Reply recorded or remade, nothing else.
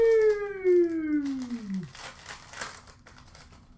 recorded